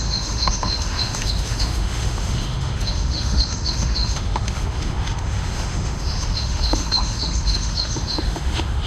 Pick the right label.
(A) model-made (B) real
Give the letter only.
A